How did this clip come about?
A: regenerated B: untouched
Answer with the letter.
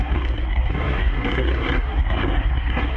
A